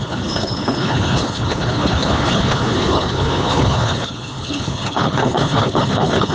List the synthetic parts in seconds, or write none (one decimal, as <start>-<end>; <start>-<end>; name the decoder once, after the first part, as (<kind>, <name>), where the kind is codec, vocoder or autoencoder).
0.0-6.3 (codec, HILCodec)